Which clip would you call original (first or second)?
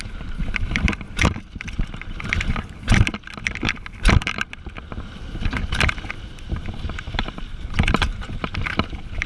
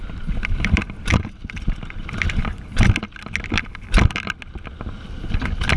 second